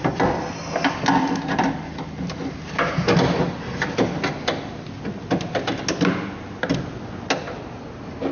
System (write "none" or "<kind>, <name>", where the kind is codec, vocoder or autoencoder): none